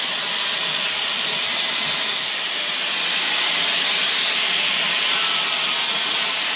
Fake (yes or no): no